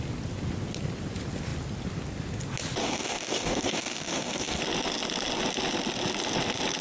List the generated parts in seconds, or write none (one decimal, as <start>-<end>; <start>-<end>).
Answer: 2.8-4.6